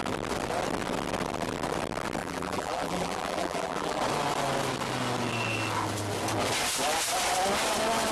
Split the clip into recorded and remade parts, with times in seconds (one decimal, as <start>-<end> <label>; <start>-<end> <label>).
0.0-2.2 recorded; 2.2-4.0 remade; 4.0-8.1 recorded